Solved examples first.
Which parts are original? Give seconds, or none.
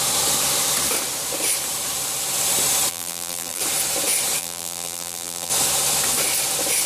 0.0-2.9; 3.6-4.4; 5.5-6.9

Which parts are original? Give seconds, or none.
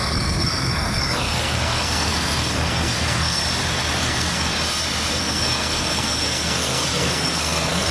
3.4-4.0; 4.5-5.2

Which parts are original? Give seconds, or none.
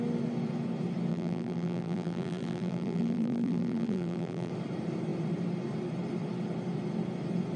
0.0-1.1; 4.5-7.6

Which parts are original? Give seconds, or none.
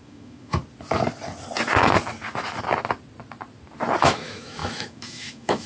0.6-4.0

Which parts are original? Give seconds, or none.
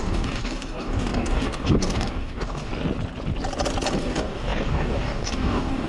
2.7-4.0